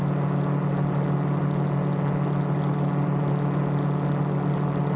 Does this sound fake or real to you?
real